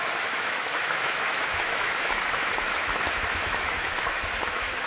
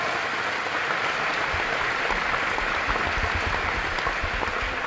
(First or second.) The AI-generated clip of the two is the first